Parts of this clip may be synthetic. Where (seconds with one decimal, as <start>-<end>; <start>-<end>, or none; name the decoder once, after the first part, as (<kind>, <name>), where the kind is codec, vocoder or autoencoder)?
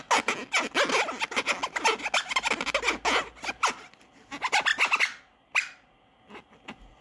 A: none